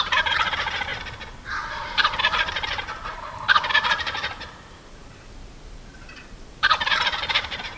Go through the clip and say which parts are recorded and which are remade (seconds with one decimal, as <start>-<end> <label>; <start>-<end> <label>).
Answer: 0.0-0.9 remade; 0.9-1.5 recorded; 1.5-7.8 remade